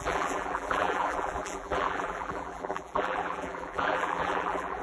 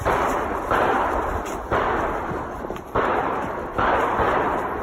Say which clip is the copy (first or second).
first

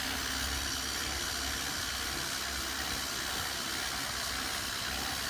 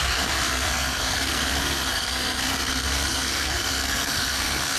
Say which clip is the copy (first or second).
second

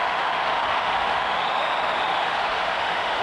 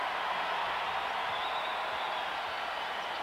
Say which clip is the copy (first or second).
first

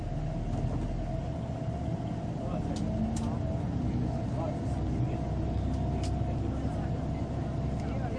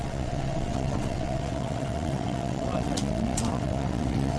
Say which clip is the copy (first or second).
second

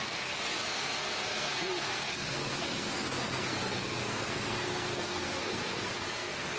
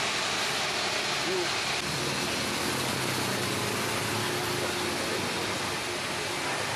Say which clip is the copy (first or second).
first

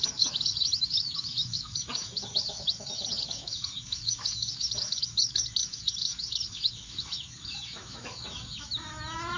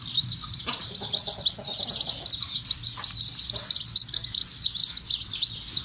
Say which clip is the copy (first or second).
first